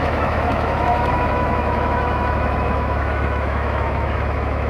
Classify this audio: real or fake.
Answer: fake